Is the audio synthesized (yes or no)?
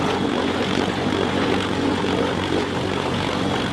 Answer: yes